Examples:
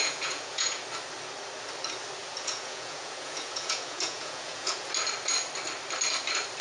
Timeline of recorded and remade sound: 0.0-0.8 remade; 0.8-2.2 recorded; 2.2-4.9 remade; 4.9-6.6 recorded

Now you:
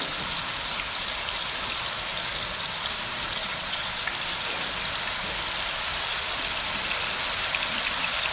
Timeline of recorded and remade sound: 0.0-3.4 recorded; 3.4-4.0 remade; 4.0-8.3 recorded

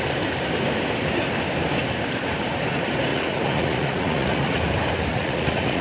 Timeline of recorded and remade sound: 0.0-3.1 recorded; 3.1-4.6 remade; 4.6-5.1 recorded; 5.1-5.8 remade

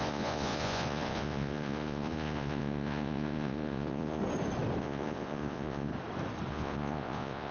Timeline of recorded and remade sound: 0.0-4.2 remade; 4.2-4.8 recorded; 4.8-5.9 remade; 5.9-6.5 recorded; 6.5-7.5 remade

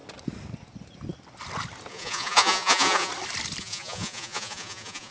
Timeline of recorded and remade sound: 0.0-1.9 recorded; 1.9-3.1 remade; 3.1-3.6 recorded; 3.6-5.1 remade

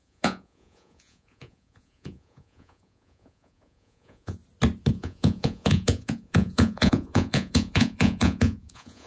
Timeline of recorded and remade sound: 0.0-4.4 remade; 4.4-4.9 recorded; 4.9-9.1 remade

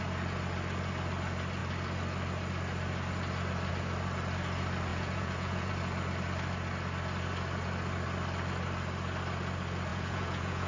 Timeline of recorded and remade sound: 0.0-4.9 recorded; 4.9-5.7 remade; 5.7-9.9 recorded; 9.9-10.7 remade

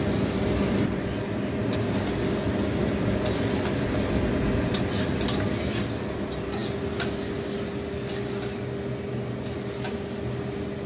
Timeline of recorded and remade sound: 0.0-10.9 recorded